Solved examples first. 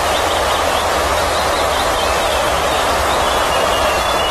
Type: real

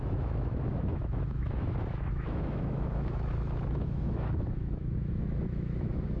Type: fake